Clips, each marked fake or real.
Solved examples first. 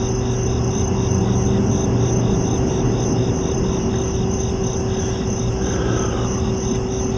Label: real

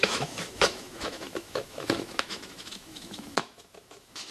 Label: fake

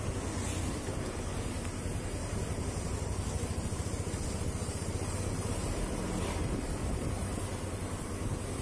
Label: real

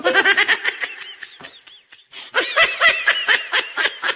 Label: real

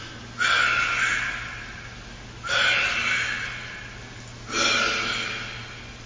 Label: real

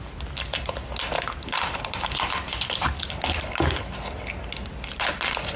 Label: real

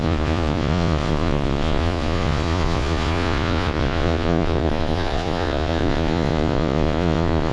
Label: fake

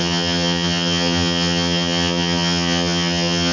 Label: fake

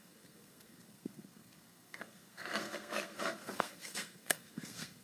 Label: fake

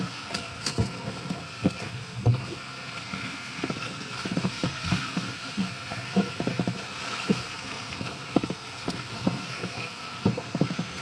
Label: fake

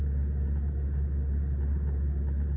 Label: real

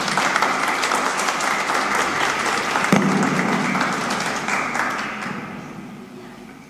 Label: real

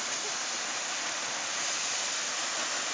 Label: real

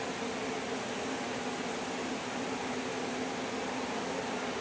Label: real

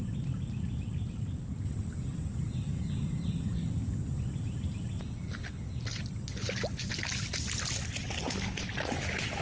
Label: real